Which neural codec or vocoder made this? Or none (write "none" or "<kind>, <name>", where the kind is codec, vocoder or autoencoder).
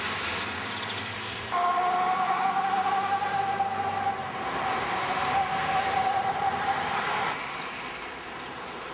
none